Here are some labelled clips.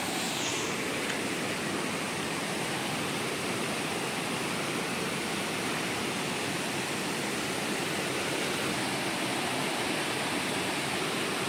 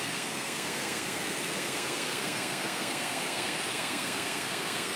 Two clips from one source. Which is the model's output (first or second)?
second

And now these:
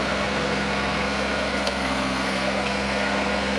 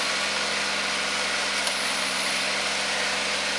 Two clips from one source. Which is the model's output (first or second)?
first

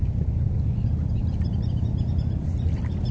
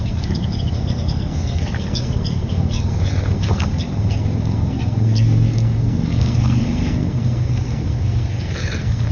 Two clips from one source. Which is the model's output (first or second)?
second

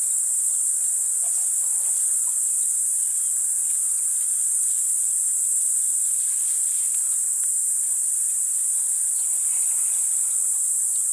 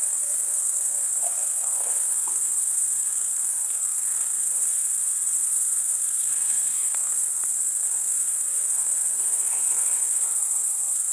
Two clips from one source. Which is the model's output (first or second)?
second